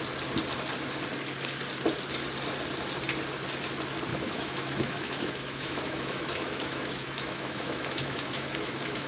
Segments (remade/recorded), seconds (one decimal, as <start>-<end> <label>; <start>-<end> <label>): 0.0-4.1 recorded; 4.1-9.1 remade